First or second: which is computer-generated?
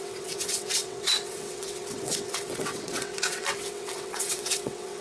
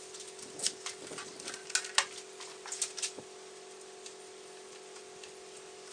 first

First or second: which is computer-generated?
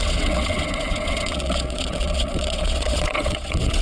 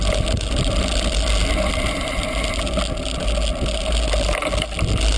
first